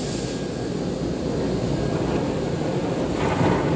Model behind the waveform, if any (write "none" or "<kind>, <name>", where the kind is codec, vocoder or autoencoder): none